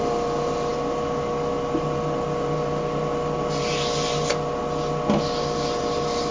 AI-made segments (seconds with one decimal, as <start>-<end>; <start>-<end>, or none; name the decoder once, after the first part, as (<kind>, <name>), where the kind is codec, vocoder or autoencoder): none